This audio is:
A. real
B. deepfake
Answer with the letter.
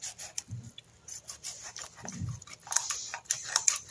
B